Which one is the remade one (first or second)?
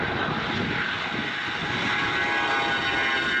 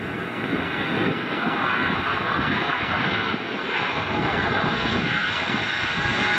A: second